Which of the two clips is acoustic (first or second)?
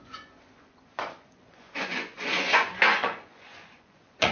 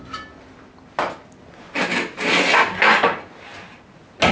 second